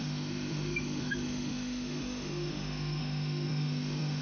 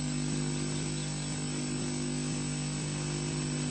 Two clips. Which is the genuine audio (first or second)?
second